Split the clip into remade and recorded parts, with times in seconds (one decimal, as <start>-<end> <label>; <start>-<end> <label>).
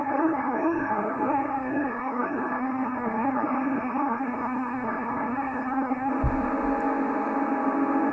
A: 0.0-6.1 remade; 6.1-8.1 recorded